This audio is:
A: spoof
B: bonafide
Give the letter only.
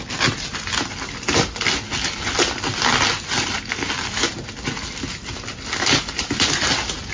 B